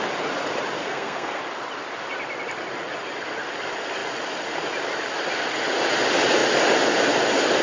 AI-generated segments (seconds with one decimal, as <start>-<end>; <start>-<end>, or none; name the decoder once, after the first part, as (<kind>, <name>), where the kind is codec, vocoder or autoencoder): 0.8-1.4 (codec, SNAC)

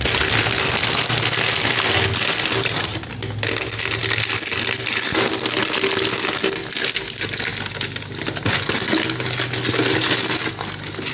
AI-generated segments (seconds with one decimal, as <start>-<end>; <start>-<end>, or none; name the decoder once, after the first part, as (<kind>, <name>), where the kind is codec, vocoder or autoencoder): none

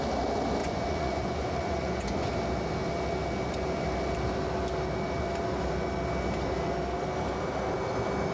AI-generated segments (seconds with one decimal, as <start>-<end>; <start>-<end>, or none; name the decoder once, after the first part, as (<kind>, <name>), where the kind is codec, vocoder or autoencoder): 0.6-2.3 (vocoder, Vocos)

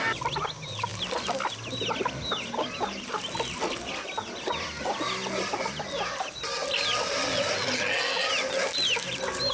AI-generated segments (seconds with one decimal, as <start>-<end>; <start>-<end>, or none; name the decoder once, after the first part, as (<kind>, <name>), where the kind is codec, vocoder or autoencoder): none

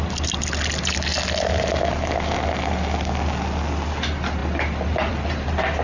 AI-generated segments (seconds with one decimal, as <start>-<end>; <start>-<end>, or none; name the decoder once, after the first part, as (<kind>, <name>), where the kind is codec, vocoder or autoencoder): none

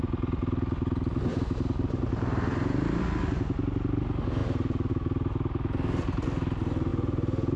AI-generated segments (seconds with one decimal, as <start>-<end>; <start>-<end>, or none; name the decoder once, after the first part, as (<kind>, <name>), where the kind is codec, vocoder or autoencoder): 1.3-3.0 (vocoder, BigVGAN v2); 4.4-4.9

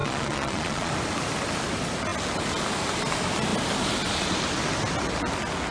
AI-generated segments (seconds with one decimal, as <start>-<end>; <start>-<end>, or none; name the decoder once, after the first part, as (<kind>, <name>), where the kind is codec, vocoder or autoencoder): 0.0-0.9 (vocoder, Vocos)

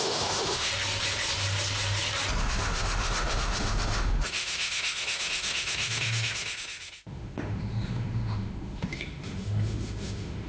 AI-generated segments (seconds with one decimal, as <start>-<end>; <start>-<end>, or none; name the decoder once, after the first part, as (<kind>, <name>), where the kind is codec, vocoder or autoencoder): 0.0-0.7 (autoencoder, DAC-VAE); 2.4-10.5